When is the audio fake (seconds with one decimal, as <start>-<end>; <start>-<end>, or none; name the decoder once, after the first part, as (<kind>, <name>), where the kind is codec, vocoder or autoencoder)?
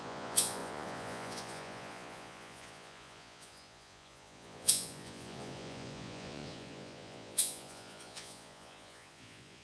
0.0-9.6 (vocoder, Vocos)